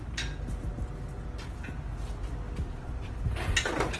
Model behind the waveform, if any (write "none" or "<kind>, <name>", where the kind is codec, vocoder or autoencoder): none